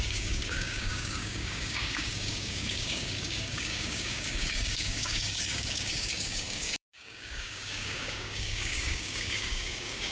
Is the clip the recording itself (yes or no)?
no